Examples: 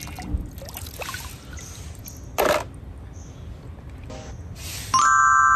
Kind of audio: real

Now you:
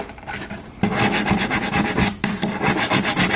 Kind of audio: real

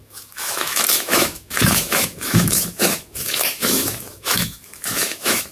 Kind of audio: fake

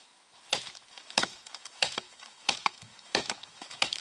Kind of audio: fake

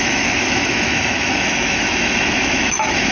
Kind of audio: fake